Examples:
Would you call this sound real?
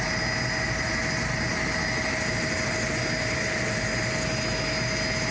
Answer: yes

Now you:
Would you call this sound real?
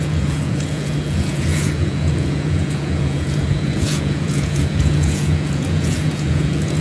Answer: no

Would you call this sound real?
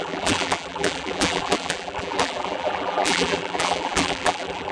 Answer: no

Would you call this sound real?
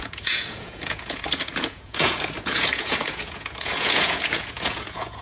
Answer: no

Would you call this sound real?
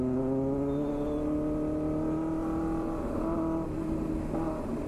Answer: yes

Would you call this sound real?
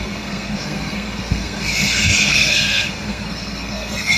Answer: no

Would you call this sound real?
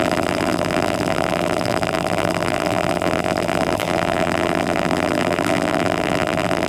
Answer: no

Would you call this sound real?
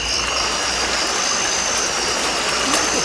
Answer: yes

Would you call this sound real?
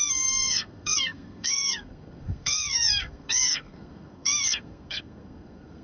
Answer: no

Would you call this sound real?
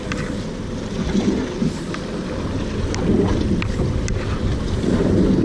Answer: yes